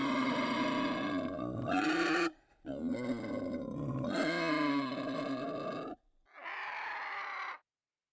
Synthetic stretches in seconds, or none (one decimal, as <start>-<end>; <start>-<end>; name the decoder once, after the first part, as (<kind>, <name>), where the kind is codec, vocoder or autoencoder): 0.0-0.6 (vocoder, WaveNeXt)